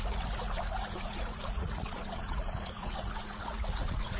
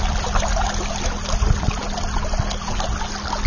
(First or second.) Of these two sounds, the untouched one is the second